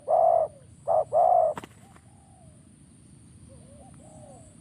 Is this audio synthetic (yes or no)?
no